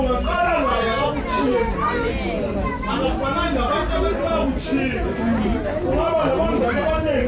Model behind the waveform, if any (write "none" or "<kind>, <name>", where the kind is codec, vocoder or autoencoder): none